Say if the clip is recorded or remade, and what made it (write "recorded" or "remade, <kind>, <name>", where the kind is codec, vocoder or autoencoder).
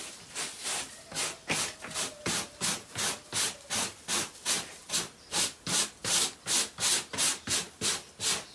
recorded